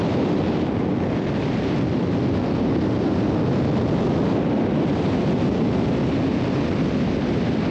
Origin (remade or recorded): recorded